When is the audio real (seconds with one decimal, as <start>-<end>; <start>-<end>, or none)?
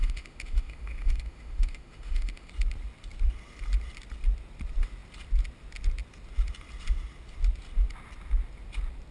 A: 2.5-9.1